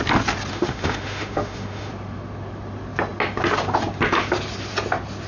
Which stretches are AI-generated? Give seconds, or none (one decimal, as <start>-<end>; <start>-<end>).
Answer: 0.5-1.9